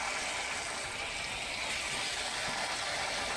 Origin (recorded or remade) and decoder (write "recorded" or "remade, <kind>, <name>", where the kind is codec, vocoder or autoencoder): recorded